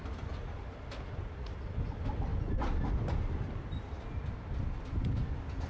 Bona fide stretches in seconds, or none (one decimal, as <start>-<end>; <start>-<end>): 0.0-5.7